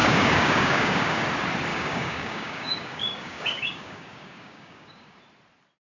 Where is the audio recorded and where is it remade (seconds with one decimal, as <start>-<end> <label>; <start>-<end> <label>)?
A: 0.0-1.2 remade; 1.2-1.7 recorded; 1.7-5.2 remade; 5.2-5.9 recorded